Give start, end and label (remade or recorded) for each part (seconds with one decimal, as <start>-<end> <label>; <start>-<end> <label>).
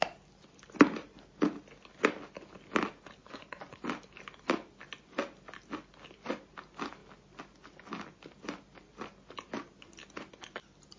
0.0-3.2 recorded; 3.2-3.8 remade; 3.8-11.0 recorded